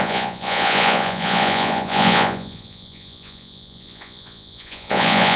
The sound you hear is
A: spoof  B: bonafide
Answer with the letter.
A